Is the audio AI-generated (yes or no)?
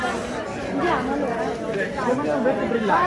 no